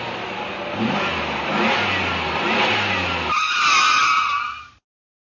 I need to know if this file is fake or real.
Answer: real